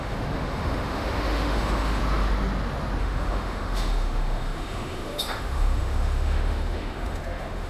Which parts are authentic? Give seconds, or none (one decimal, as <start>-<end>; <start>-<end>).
2.0-3.0